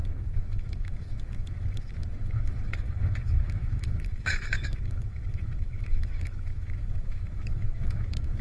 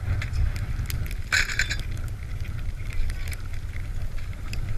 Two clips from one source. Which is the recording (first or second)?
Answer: second